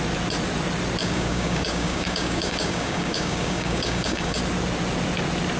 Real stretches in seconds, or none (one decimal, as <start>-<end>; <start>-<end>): 0.0-1.0; 4.4-5.6